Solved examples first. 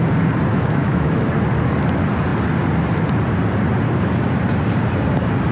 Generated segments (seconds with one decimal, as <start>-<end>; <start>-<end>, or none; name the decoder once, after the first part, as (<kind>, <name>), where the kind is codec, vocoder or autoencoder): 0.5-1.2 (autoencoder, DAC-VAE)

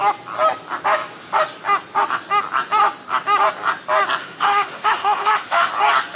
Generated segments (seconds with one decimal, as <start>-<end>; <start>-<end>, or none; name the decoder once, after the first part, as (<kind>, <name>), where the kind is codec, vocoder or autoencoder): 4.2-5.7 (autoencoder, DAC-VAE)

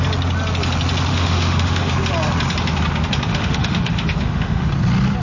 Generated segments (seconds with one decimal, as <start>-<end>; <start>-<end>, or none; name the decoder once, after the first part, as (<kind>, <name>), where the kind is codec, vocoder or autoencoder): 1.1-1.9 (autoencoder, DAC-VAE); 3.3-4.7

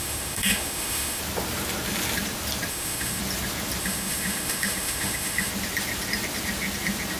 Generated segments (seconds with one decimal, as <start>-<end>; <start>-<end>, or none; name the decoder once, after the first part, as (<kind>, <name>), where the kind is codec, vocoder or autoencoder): 0.0-1.2 (autoencoder, DAC-VAE); 2.7-3.2; 3.8-5.5

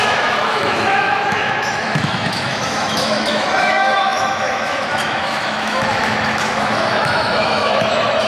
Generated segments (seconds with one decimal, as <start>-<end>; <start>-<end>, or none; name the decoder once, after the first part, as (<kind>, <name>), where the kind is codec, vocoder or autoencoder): 0.0-8.3 (autoencoder, DAC-VAE)

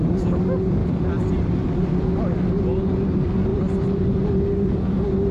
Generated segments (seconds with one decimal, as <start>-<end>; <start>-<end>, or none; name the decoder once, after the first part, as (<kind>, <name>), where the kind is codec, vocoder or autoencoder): none

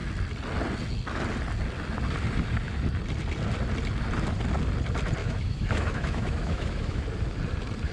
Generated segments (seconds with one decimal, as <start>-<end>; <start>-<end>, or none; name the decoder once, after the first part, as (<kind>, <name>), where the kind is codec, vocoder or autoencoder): 5.2-7.0 (autoencoder, DAC-VAE)